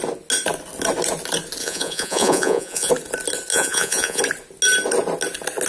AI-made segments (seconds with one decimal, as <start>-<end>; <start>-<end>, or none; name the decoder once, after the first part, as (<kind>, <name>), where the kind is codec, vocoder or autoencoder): 1.6-2.9 (vocoder, Vocos); 3.5-4.2